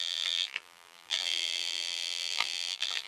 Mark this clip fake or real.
fake